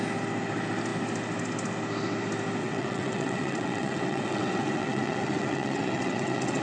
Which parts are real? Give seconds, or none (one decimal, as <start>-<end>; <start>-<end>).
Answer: 0.0-2.6